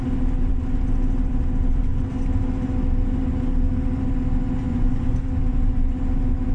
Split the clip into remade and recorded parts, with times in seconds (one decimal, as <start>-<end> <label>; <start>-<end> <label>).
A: 0.0-4.7 recorded; 4.7-5.2 remade; 5.2-6.5 recorded